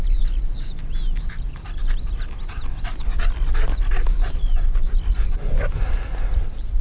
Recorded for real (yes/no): yes